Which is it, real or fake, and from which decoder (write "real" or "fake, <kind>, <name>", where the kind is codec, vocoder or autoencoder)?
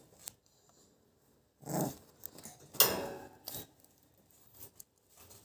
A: real